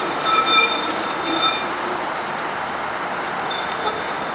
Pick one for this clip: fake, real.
fake